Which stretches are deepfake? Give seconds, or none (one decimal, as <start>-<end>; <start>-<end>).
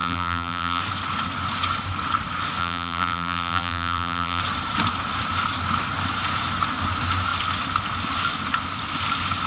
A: 0.0-0.8; 2.6-4.4